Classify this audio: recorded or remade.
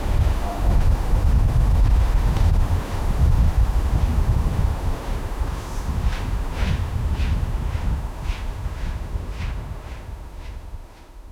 remade